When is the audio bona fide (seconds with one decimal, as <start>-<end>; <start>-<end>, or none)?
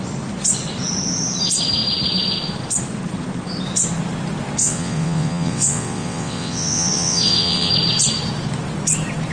0.0-4.6; 7.7-9.3